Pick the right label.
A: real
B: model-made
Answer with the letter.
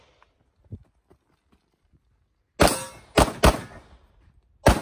A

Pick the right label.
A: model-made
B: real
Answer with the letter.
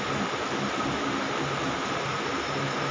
A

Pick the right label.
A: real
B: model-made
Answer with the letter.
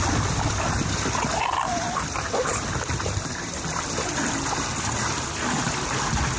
B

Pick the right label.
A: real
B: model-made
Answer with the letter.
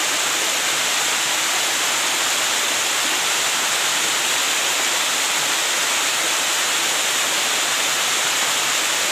A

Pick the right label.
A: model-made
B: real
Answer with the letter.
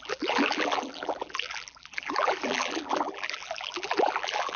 A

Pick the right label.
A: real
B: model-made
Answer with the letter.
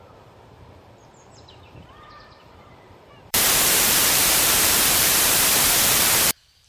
B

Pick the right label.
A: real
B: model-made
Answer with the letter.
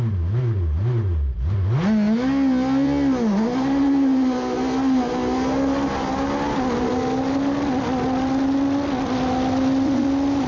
A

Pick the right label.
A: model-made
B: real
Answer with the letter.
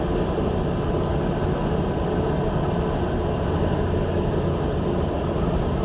B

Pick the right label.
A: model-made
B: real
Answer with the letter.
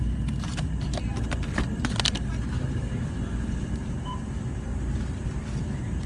A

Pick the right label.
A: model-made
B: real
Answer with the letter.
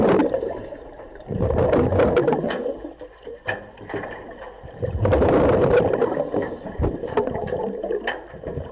A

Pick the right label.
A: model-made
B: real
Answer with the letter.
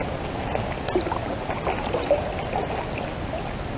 B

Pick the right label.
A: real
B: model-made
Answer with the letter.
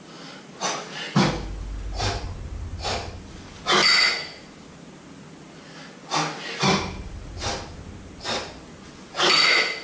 A